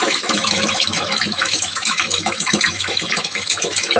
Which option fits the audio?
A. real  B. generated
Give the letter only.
B